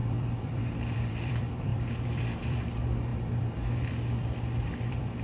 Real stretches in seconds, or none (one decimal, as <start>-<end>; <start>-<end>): none